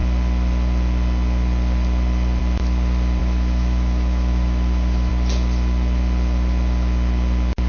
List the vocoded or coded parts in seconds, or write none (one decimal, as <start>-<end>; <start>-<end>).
3.2-5.1